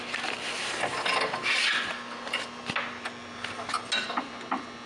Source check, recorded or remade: recorded